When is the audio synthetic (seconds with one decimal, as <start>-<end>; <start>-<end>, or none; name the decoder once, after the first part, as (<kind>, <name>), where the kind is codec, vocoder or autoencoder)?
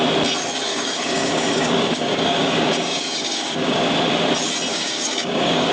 0.7-3.9 (codec, DAC); 4.7-5.7